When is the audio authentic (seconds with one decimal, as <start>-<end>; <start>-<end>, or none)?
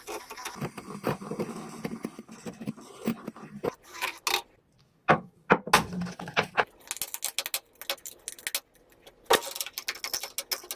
0.0-4.8; 5.5-10.8